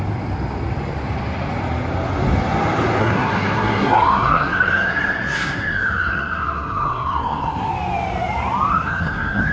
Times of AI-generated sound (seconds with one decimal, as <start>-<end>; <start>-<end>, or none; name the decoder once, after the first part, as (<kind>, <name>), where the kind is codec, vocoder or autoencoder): 3.0-7.7 (codec, SNAC); 8.7-9.5